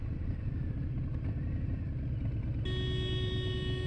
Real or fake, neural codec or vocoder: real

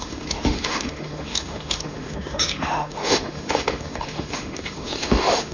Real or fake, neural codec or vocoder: fake, autoencoder, DAC-VAE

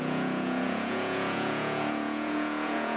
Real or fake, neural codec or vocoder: fake, vocoder, Vocos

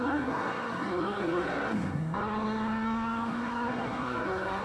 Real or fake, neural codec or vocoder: fake, codec, SNAC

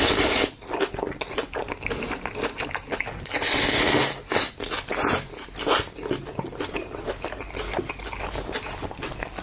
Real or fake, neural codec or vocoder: real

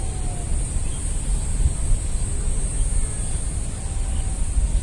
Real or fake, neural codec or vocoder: real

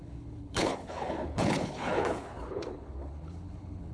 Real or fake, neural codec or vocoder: fake, codec, HILCodec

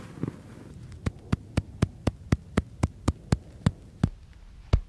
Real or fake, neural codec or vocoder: real